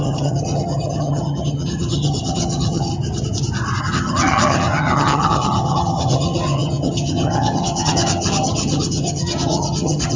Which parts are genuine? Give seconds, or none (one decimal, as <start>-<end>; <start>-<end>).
2.9-3.8